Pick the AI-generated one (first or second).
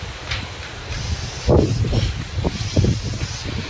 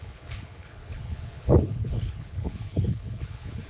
second